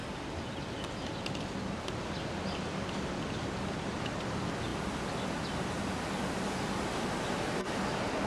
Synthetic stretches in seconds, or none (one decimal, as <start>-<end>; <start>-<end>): none